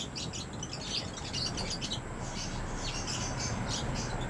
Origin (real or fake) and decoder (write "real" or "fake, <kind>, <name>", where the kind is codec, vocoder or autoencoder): real